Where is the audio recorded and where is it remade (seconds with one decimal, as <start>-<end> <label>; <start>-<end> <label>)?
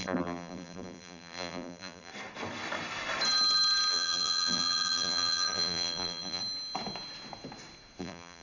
0.0-2.1 remade; 2.1-3.9 recorded; 3.9-6.4 remade; 6.4-8.0 recorded; 8.0-8.4 remade